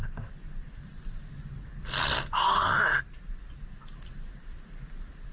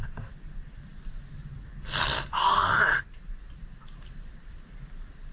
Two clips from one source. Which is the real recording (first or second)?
first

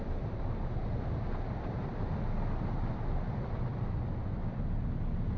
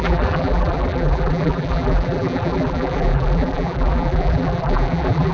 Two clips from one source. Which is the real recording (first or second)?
first